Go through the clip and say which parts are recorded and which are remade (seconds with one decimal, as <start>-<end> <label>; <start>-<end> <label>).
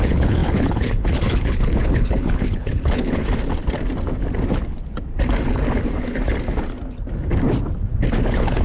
0.0-3.2 remade; 3.2-8.2 recorded; 8.2-8.6 remade